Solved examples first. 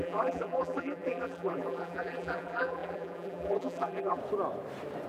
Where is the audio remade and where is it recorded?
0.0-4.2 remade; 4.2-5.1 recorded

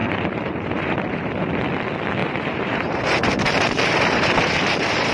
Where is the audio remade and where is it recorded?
0.0-1.5 remade; 1.5-2.2 recorded; 2.2-5.1 remade